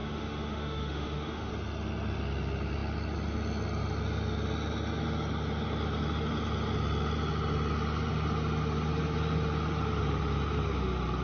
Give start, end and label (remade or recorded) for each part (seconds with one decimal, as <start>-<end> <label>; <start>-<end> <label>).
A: 0.0-1.5 remade; 1.5-11.2 recorded

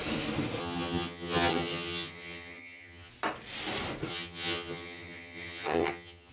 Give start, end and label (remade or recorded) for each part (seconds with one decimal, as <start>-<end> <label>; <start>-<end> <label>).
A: 0.0-0.6 recorded; 0.6-3.1 remade; 3.1-4.1 recorded; 4.1-6.3 remade

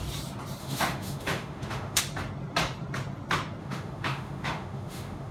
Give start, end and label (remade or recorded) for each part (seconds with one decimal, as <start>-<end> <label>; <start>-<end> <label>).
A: 0.0-0.6 recorded; 0.6-2.0 remade; 2.0-3.6 recorded; 3.6-5.3 remade

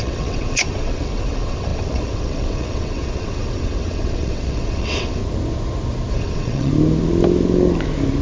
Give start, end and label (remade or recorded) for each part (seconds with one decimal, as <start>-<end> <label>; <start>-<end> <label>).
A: 0.0-5.2 remade; 5.2-6.1 recorded; 6.1-6.7 remade; 6.7-8.2 recorded

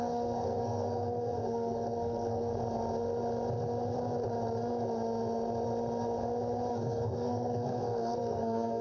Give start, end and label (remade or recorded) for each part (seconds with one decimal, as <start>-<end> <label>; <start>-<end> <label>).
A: 0.0-2.5 remade; 2.5-6.7 recorded; 6.7-8.8 remade

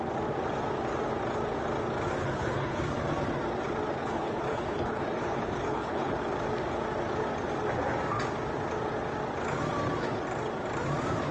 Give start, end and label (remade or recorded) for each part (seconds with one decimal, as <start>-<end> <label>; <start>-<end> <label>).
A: 0.0-2.2 recorded; 2.2-2.8 remade; 2.8-4.0 recorded; 4.0-6.2 remade; 6.2-11.3 recorded

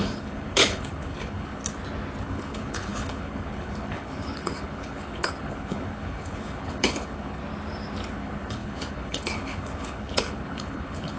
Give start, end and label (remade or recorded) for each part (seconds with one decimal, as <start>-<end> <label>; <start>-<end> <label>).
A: 0.0-1.6 remade; 1.6-2.2 recorded; 2.2-7.4 remade; 7.4-8.1 recorded; 8.1-11.2 remade